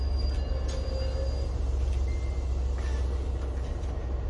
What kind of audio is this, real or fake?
real